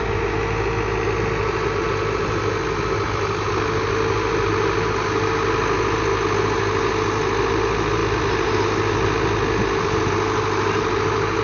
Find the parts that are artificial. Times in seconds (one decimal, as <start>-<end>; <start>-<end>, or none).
none

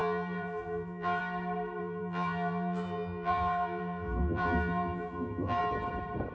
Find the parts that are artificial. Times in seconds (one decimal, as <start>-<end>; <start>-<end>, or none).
0.0-1.2; 1.8-5.6

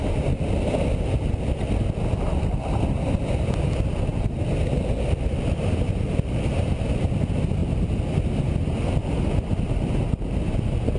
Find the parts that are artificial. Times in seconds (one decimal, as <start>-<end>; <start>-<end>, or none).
none